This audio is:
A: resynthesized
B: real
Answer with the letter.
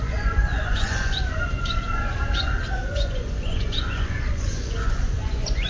A